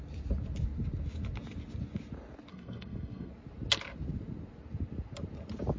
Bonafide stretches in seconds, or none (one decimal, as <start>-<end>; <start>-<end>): 0.0-2.5; 3.3-5.8